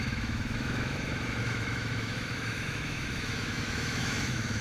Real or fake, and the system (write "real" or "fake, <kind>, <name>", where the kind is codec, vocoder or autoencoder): fake, autoencoder, DAC-VAE